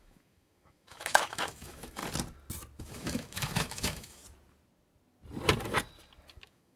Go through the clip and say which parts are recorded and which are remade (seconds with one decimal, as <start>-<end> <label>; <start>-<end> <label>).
0.0-2.0 remade; 2.0-2.8 recorded; 2.8-4.2 remade; 4.2-6.3 recorded; 6.3-6.8 remade